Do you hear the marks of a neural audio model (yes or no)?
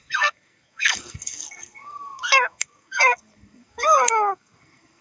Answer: yes